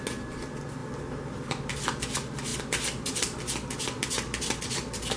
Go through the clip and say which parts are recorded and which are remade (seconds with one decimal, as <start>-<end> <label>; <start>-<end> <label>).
0.0-5.2 recorded